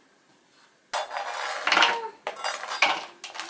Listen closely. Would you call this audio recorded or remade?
recorded